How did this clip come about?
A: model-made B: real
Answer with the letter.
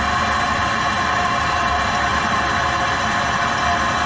B